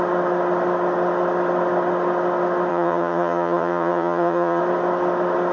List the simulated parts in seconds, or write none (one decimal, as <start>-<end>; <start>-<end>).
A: 2.7-4.6